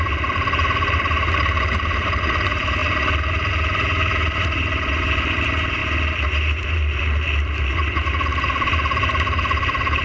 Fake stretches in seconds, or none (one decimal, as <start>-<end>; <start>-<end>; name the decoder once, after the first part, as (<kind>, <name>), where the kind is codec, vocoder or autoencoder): 0.0-5.8 (vocoder, BigVGAN v2); 6.6-10.0